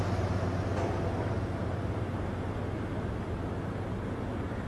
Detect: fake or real real